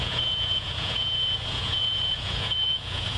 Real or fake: fake